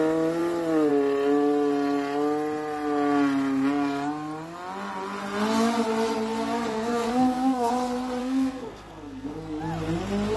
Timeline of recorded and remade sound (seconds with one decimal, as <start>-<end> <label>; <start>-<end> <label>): 0.0-6.7 recorded; 6.7-7.7 remade; 7.7-8.2 recorded; 8.2-9.6 remade; 9.6-10.4 recorded